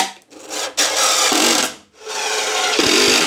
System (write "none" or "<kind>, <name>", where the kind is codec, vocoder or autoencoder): none